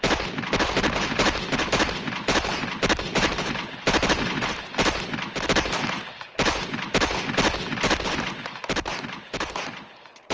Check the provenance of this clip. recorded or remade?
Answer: recorded